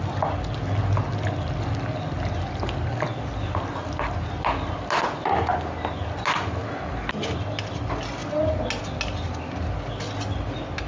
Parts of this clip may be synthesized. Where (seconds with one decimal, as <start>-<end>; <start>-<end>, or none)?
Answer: none